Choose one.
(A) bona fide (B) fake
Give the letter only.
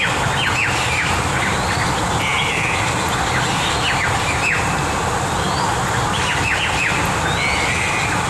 A